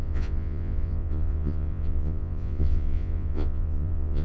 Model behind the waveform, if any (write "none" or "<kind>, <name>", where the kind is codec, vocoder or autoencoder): vocoder, Vocos